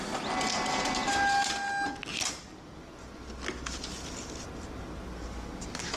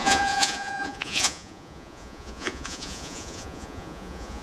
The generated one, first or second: second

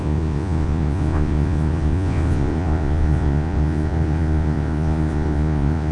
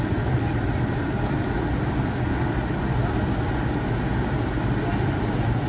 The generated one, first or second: first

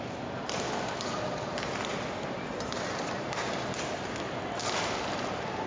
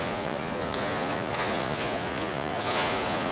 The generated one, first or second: second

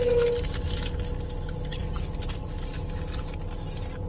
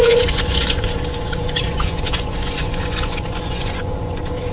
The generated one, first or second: second